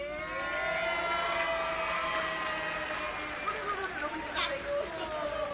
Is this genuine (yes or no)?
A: yes